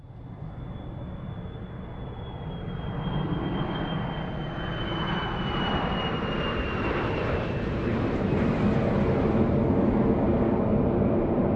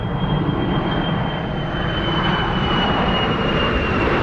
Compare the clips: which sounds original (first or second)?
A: first